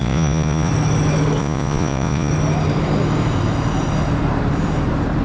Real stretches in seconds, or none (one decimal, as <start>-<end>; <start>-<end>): 0.7-1.4; 2.3-5.2